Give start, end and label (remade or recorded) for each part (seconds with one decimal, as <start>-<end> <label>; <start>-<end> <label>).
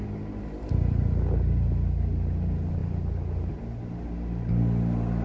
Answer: 0.0-5.2 recorded